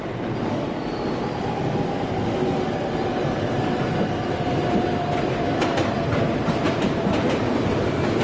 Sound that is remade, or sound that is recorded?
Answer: recorded